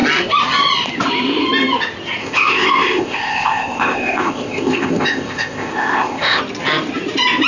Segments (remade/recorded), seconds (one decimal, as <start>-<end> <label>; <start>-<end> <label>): 0.0-2.2 recorded; 2.2-6.4 remade; 6.4-7.5 recorded